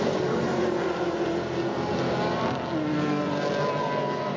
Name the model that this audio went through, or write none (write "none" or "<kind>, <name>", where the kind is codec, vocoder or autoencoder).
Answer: none